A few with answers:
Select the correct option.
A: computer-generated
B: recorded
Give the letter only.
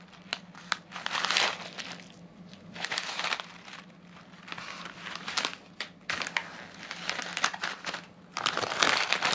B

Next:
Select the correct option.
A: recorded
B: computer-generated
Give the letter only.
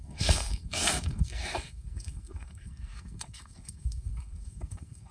B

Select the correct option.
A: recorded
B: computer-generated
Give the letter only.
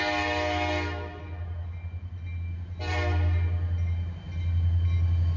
A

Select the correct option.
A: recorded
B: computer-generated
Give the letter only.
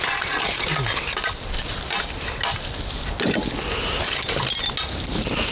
A